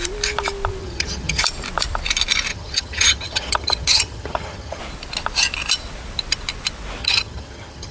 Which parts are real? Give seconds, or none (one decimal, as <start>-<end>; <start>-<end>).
0.0-0.8; 1.4-2.5; 4.8-7.0